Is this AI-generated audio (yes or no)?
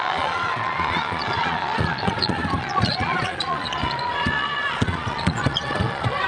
yes